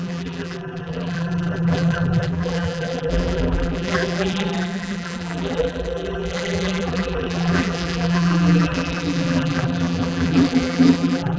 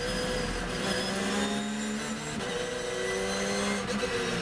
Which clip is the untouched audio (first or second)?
second